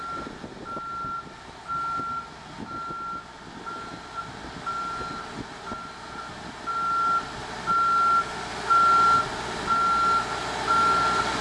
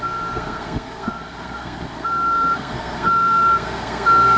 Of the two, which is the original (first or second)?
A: first